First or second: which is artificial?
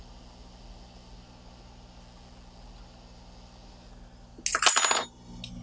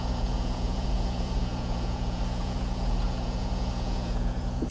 second